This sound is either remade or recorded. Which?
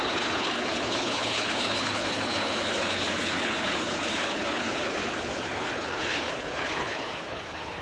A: remade